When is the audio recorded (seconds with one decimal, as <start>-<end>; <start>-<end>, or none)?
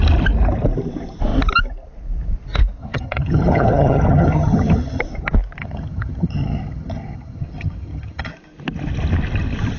0.0-2.8; 5.0-5.6; 8.3-9.8